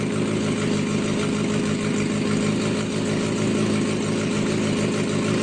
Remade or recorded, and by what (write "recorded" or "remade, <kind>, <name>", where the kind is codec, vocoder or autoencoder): recorded